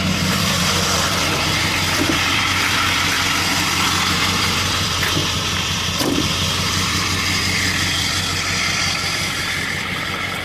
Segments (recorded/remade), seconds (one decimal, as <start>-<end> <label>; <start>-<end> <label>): 0.0-10.4 remade